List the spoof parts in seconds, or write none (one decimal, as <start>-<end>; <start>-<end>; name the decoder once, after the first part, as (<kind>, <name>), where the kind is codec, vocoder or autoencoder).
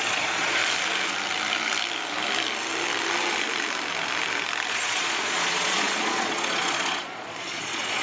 0.0-0.6 (vocoder, Vocos); 4.7-8.0